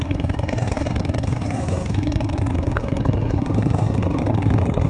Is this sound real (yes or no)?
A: no